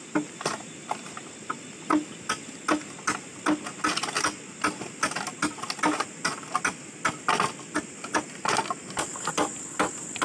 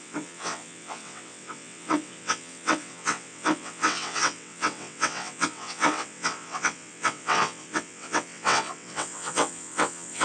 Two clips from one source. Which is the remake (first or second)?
second